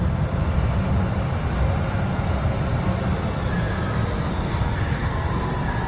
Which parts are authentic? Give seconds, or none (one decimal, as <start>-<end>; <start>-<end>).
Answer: 0.0-4.3; 5.3-5.9